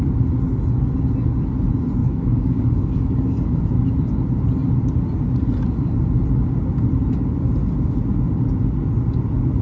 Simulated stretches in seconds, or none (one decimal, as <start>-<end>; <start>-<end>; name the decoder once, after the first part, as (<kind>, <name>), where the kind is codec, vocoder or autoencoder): 2.0-3.6 (codec, DAC)